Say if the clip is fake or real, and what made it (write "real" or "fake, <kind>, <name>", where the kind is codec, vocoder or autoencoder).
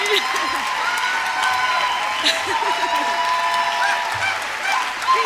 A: real